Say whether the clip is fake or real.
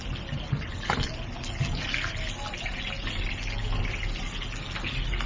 real